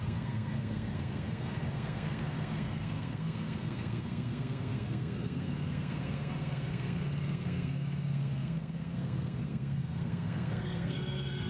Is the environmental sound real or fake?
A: fake